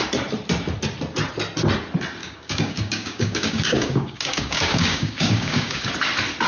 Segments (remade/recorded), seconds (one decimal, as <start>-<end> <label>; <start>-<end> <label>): 0.0-2.2 recorded; 2.2-5.9 remade; 5.9-6.5 recorded